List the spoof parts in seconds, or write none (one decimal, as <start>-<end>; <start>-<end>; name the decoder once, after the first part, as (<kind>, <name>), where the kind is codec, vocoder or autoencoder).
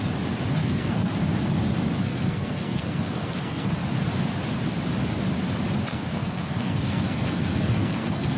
0.6-1.1 (codec, SNAC); 2.0-3.8; 5.9-8.4